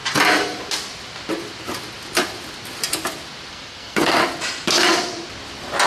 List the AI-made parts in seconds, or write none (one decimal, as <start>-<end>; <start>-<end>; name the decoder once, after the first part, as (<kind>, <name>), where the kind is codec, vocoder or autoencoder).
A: 3.5-4.2 (codec, SNAC)